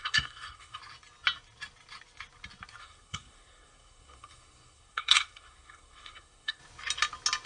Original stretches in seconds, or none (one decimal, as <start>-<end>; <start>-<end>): 0.8-2.8; 6.6-7.5